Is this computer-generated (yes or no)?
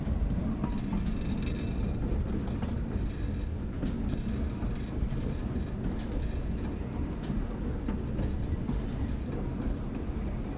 no